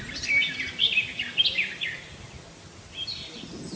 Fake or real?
real